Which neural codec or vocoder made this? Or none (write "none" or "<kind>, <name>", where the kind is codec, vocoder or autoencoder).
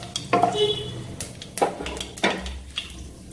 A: none